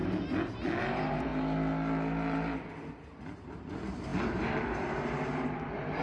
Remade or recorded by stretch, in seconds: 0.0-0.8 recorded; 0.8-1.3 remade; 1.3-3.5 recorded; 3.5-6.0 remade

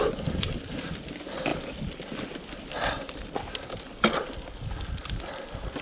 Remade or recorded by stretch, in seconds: 0.0-5.8 recorded

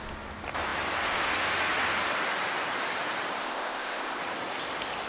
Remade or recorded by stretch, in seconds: 0.0-3.4 recorded; 3.4-4.2 remade; 4.2-5.1 recorded

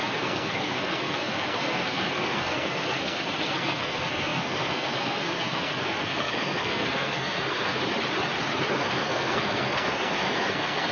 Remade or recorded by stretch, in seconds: 0.0-7.8 remade; 7.8-8.7 recorded; 8.7-10.9 remade

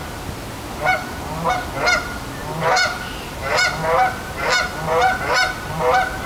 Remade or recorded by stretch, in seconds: 0.0-6.3 recorded

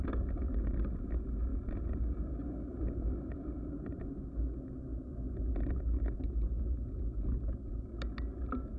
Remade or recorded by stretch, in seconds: 0.0-2.7 recorded; 2.7-4.0 remade; 4.0-8.8 recorded